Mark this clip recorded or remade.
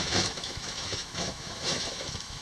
remade